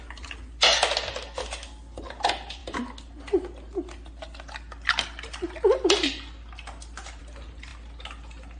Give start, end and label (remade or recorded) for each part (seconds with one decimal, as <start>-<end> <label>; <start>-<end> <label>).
0.0-8.6 recorded